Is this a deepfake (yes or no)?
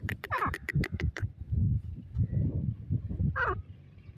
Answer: yes